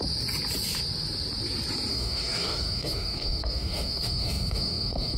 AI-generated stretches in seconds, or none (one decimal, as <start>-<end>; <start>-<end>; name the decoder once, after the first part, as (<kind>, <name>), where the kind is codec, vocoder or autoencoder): 1.9-5.2 (codec, DAC)